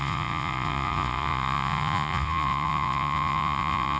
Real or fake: fake